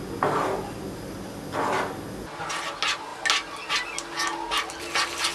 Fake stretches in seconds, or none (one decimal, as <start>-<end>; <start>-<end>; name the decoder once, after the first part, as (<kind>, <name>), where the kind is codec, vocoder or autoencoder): none